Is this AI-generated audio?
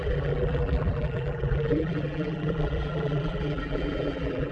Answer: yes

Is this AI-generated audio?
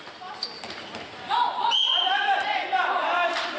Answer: yes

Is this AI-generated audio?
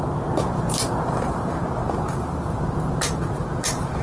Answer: yes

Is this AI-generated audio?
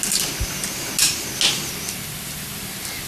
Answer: no